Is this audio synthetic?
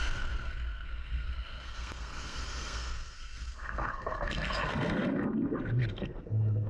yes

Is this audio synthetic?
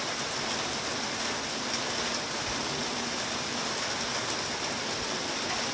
no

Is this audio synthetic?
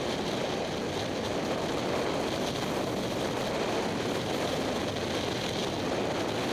no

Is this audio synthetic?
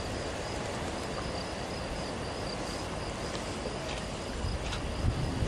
no